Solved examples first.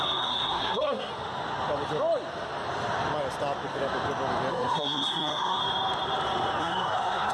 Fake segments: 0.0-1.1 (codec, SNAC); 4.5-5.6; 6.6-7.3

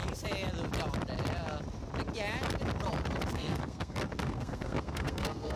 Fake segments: 3.3-5.6 (codec, SNAC)

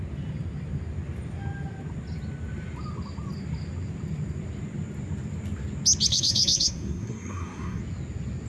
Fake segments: 6.1-7.8 (codec, SNAC)